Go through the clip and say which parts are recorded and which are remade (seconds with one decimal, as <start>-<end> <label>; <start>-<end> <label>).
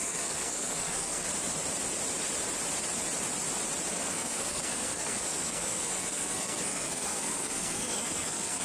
0.0-1.3 remade; 1.3-3.9 recorded; 3.9-8.6 remade